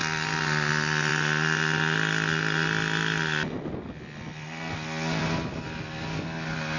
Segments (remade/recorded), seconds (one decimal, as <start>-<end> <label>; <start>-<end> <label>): 0.0-6.8 recorded